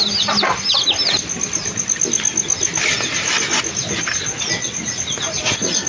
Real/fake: real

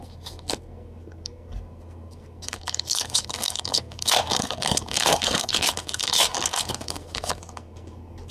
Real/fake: fake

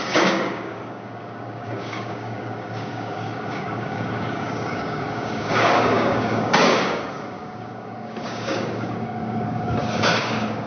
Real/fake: fake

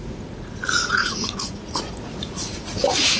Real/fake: fake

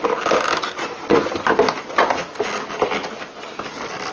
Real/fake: real